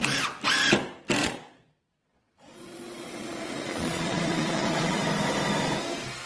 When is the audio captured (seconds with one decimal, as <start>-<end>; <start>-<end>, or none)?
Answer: 0.0-1.2; 5.0-6.3